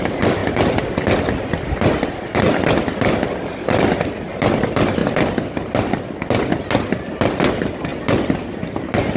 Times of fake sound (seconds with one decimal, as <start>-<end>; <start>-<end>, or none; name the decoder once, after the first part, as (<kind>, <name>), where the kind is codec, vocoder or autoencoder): none